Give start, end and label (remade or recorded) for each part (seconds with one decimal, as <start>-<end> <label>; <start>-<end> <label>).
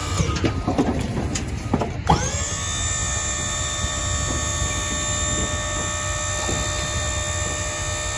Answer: 0.0-1.5 remade; 1.5-3.0 recorded; 3.0-4.0 remade; 4.0-8.2 recorded